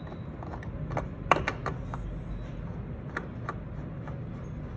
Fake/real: real